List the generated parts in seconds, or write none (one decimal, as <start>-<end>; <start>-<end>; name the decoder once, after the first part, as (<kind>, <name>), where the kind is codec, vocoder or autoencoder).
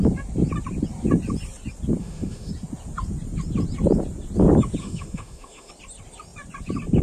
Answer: 2.0-2.5 (autoencoder, DAC-VAE); 4.8-5.7